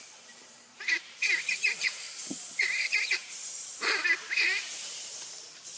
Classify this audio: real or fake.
fake